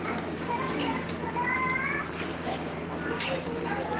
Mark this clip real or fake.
fake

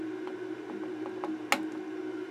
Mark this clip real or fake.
real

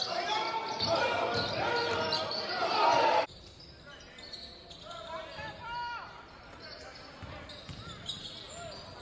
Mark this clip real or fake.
real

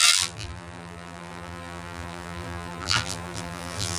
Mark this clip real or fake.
fake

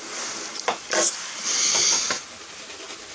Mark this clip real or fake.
real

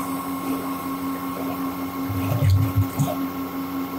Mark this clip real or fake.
fake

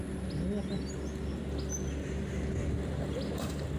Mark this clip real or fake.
real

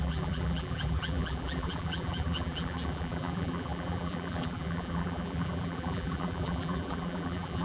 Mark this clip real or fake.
fake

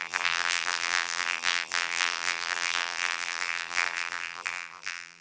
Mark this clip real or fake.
fake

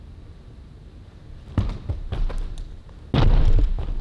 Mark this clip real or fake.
real